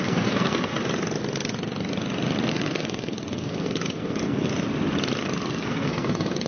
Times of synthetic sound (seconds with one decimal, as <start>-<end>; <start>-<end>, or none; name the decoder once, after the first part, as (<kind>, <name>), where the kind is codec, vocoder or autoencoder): 0.0-0.7 (codec, SNAC); 2.5-4.5; 5.5-6.5